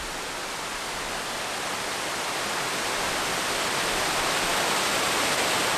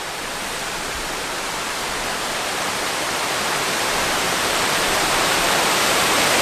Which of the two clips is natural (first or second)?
first